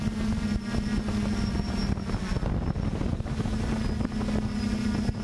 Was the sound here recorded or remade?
recorded